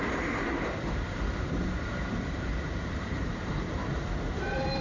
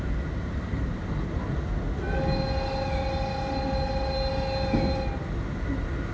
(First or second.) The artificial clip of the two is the first